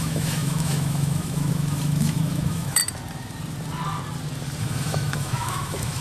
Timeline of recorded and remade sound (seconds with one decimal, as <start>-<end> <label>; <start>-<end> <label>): 0.0-2.8 remade; 2.8-4.6 recorded; 4.6-6.0 remade